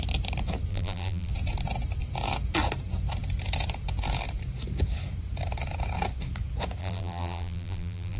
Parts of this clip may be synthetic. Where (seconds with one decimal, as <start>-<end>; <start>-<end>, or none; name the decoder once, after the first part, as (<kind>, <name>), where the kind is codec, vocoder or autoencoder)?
0.7-1.3 (vocoder, BigVGAN v2); 6.8-8.2